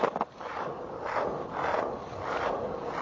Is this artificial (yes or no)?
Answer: no